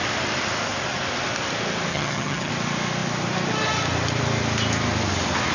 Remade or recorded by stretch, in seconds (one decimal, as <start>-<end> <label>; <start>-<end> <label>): 0.0-1.9 recorded; 1.9-2.5 remade; 2.5-5.5 recorded

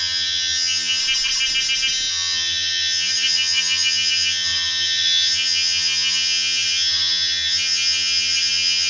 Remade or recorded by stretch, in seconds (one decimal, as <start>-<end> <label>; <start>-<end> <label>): 0.0-1.0 remade; 1.0-2.1 recorded; 2.1-8.9 remade

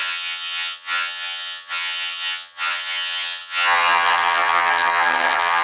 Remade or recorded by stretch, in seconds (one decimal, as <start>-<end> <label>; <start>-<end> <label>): 0.0-5.6 remade

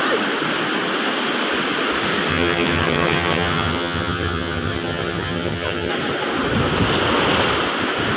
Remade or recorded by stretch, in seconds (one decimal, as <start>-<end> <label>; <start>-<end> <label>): 0.0-2.3 recorded; 2.3-5.9 remade; 5.9-8.2 recorded

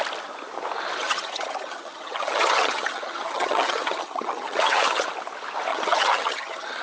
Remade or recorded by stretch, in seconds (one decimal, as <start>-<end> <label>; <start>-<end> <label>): 0.0-1.0 recorded; 1.0-5.1 remade; 5.1-5.7 recorded; 5.7-6.8 remade

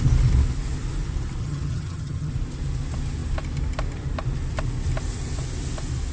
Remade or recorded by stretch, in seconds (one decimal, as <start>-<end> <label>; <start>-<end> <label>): 0.0-1.4 recorded; 1.4-2.3 remade; 2.3-6.1 recorded

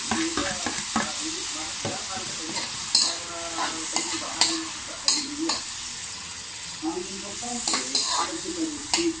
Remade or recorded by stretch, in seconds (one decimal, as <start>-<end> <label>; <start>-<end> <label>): 0.0-6.0 recorded; 6.0-6.8 remade; 6.8-9.2 recorded

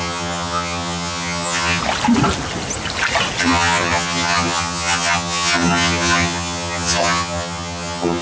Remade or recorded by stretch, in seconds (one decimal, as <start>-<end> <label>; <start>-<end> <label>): 0.0-1.8 remade; 1.8-3.4 recorded; 3.4-8.2 remade